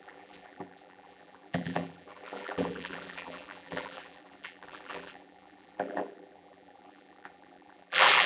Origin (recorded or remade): remade